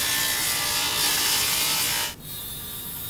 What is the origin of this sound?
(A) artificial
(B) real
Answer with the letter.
B